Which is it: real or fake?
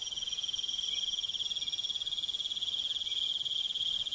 real